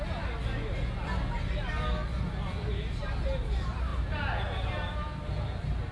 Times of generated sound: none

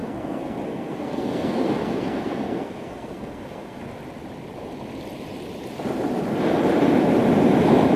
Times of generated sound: 0.0-3.8 (codec, SNAC)

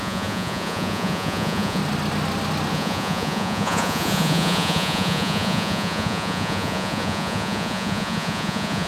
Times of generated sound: 0.0-1.8 (vocoder, Vocos); 2.7-8.9

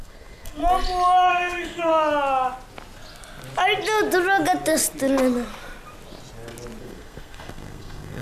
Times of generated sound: 0.0-0.6 (codec, SNAC); 1.3-1.9; 6.8-8.2

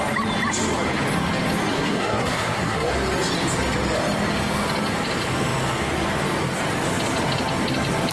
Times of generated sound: 1.7-2.9 (codec, SNAC)

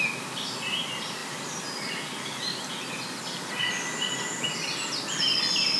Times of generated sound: none